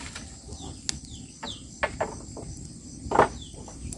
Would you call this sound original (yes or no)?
yes